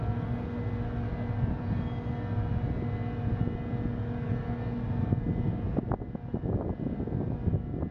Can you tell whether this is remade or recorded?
recorded